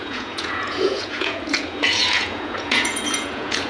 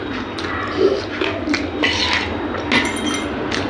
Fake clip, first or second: first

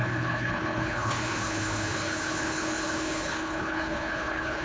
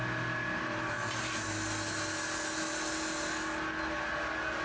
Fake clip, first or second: first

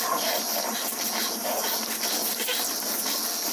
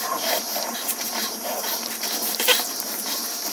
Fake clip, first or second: second